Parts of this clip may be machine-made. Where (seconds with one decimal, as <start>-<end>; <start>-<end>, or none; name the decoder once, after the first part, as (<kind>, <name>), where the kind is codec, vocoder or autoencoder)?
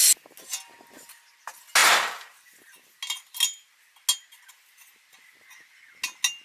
none